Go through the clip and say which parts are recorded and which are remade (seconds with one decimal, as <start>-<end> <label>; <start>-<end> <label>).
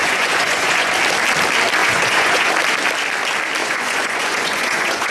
0.0-0.9 remade; 0.9-1.8 recorded; 1.8-2.5 remade; 2.5-3.6 recorded; 3.6-5.1 remade